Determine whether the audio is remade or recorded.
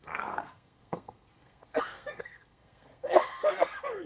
remade